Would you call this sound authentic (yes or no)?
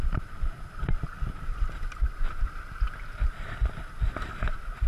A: yes